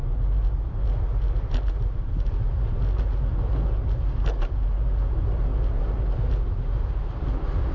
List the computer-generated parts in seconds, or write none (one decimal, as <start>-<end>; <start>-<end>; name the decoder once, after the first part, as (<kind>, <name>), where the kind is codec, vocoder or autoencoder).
none